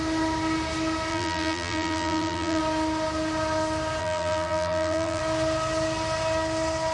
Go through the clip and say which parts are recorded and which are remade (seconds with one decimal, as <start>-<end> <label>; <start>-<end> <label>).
0.0-1.1 recorded; 1.1-2.6 remade; 2.6-4.0 recorded; 4.0-5.2 remade; 5.2-6.9 recorded